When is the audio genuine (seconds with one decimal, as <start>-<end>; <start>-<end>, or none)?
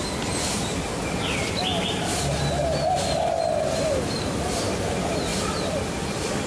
0.0-5.3; 6.0-6.5